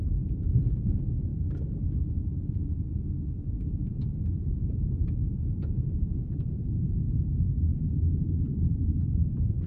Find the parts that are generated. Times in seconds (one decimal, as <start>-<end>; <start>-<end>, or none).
0.0-2.9; 3.6-9.7